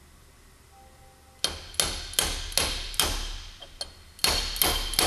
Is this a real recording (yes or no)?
yes